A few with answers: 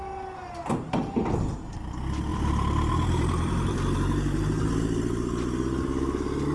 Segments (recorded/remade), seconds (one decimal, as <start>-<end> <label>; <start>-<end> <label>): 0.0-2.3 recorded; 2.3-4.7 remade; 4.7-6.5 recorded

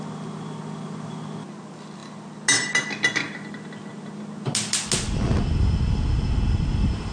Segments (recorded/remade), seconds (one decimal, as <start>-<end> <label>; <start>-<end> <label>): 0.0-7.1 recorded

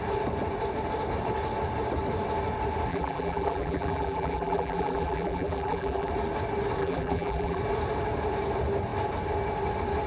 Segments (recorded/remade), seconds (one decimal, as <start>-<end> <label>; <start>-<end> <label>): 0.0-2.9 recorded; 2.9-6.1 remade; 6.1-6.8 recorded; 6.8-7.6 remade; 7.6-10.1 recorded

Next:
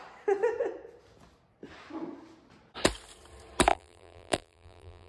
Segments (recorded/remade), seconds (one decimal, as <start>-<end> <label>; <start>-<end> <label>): 0.0-3.7 recorded; 3.7-5.1 remade

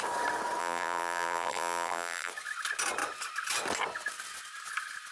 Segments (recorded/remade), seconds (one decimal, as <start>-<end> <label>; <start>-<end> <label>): 0.0-0.6 recorded; 0.6-2.3 remade; 2.3-5.1 recorded

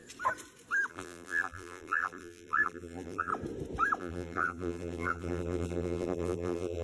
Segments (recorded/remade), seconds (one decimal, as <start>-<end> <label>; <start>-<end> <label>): 0.0-0.9 recorded; 0.9-3.3 remade; 3.3-4.0 recorded; 4.0-6.8 remade